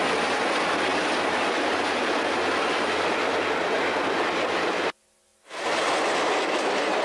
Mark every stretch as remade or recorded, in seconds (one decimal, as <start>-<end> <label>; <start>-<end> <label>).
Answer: 0.0-7.0 recorded

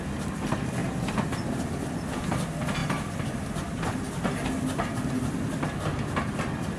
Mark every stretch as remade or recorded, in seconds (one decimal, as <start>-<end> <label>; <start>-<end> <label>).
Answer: 0.0-6.8 recorded

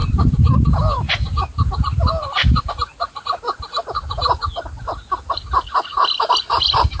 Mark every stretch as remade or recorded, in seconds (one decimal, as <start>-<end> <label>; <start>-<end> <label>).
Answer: 0.0-4.2 remade; 4.2-7.0 recorded

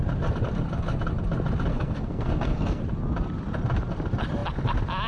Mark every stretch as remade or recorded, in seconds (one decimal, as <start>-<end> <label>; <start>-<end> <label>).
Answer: 0.0-1.7 recorded; 1.7-2.8 remade; 2.8-5.1 recorded

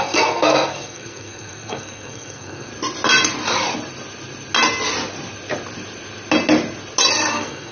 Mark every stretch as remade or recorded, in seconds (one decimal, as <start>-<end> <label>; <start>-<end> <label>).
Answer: 0.0-2.7 remade; 2.7-7.3 recorded; 7.3-7.7 remade

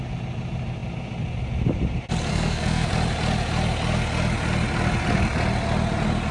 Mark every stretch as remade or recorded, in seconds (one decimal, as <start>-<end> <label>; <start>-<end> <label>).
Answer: 0.0-2.3 recorded; 2.3-2.9 remade; 2.9-6.3 recorded